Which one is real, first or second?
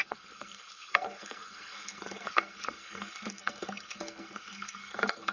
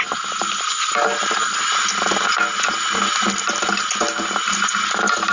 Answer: second